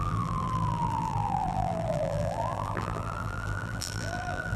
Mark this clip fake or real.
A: fake